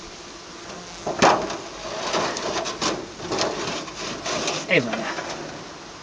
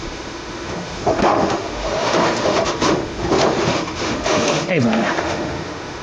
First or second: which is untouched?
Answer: first